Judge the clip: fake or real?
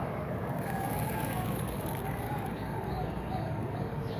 fake